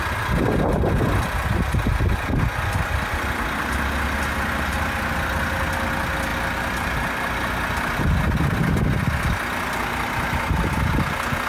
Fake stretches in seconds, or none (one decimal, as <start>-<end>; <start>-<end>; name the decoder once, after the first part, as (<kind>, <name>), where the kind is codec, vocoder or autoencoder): none